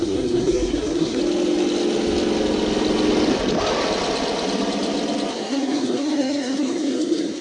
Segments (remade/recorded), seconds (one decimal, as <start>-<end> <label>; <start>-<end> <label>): 0.0-1.2 remade; 1.2-5.3 recorded; 5.3-7.4 remade